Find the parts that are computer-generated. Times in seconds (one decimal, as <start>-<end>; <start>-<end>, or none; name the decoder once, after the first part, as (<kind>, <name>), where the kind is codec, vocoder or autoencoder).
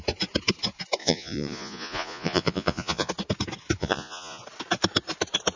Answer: 1.0-3.1 (vocoder, Vocos); 3.8-4.4